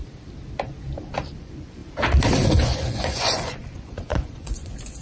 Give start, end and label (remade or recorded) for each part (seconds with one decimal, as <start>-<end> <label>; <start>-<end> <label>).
0.0-1.4 recorded; 1.4-1.8 remade; 1.8-2.5 recorded; 2.5-5.0 remade